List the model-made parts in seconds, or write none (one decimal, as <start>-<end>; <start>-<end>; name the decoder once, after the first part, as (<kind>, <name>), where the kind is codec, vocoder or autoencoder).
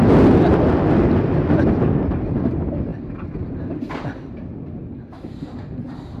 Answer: none